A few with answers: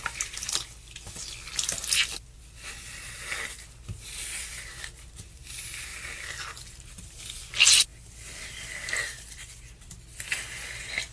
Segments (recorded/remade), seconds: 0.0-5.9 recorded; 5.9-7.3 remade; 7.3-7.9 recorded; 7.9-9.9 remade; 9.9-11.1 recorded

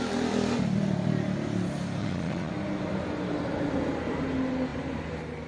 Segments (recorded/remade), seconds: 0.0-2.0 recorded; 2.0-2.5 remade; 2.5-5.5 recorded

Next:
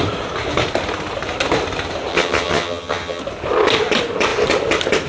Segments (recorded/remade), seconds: 0.0-2.1 recorded; 2.1-3.2 remade; 3.2-5.1 recorded

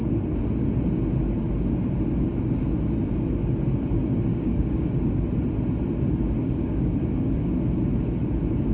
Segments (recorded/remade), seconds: 0.0-4.3 recorded; 4.3-5.1 remade; 5.1-6.4 recorded; 6.4-7.4 remade; 7.4-8.7 recorded

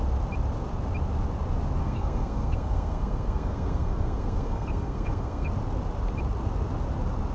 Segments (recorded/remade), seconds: 0.0-1.8 recorded; 1.8-5.5 remade; 5.5-7.3 recorded